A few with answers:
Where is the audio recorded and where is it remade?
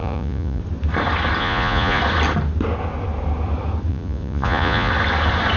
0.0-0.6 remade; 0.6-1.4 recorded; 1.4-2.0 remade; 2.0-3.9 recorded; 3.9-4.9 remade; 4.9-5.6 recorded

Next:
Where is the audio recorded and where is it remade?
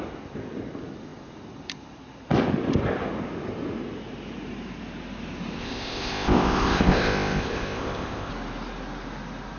0.0-5.6 recorded; 5.6-8.3 remade; 8.3-9.6 recorded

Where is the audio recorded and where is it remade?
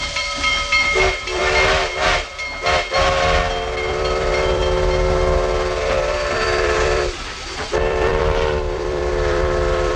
0.0-1.4 remade; 1.4-3.9 recorded; 3.9-4.6 remade; 4.6-5.8 recorded; 5.8-10.0 remade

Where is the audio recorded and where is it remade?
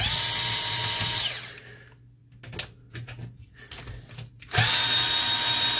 0.0-5.8 recorded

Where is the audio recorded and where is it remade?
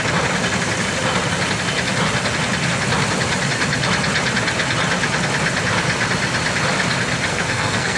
0.0-7.3 recorded; 7.3-8.0 remade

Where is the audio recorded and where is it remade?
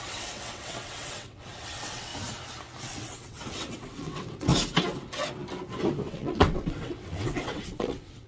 0.0-2.1 remade; 2.1-2.8 recorded; 2.8-4.5 remade; 4.5-6.1 recorded; 6.1-8.3 remade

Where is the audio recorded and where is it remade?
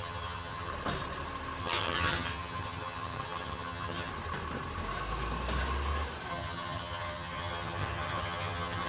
0.0-0.7 remade; 0.7-1.6 recorded; 1.6-4.1 remade; 4.1-6.3 recorded; 6.3-8.9 remade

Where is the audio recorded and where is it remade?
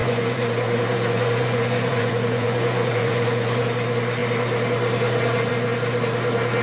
0.0-3.6 remade; 3.6-6.6 recorded